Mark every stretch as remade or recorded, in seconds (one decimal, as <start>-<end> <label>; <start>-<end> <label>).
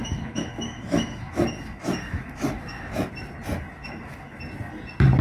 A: 0.0-3.1 remade; 3.1-3.8 recorded; 3.8-4.4 remade; 4.4-5.2 recorded